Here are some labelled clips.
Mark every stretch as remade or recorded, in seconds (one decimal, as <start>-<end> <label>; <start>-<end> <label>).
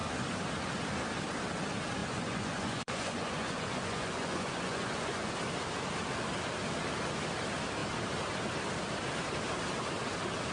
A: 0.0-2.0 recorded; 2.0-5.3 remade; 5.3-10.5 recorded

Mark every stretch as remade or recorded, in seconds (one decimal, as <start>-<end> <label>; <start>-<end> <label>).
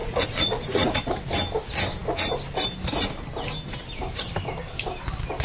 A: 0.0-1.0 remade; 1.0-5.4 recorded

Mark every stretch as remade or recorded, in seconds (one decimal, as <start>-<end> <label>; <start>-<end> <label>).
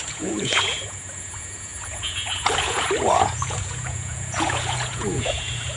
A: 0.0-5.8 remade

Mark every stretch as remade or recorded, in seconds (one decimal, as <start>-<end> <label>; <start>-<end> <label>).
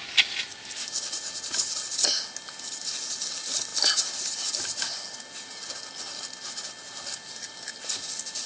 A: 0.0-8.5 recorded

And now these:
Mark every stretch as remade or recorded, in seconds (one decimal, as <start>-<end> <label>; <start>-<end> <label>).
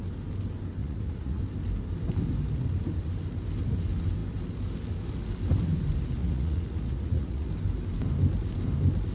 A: 0.0-0.8 recorded; 0.8-1.4 remade; 1.4-6.2 recorded; 6.2-7.5 remade; 7.5-9.1 recorded